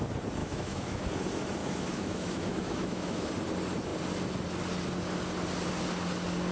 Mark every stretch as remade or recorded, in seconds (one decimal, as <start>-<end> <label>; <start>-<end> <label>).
0.0-0.4 recorded; 0.4-1.0 remade; 1.0-1.6 recorded; 1.6-3.3 remade; 3.3-6.5 recorded